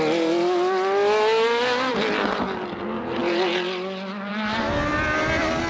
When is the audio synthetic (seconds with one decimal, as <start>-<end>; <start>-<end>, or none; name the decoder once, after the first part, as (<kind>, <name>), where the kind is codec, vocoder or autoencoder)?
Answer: none